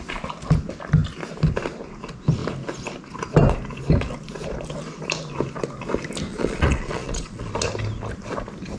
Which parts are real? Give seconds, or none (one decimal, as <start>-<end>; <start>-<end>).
0.0-6.3; 7.5-8.8